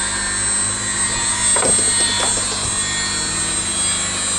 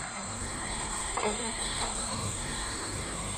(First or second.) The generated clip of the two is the second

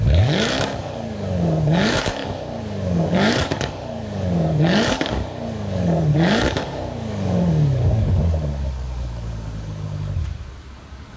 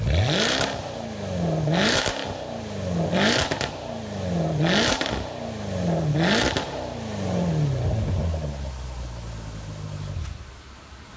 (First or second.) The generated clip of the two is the first